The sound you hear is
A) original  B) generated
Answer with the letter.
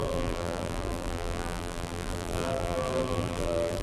B